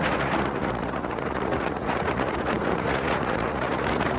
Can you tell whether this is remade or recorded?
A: remade